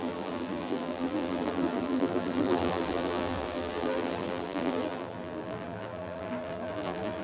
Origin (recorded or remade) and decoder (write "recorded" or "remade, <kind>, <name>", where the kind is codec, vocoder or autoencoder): remade, vocoder, BigVGAN v2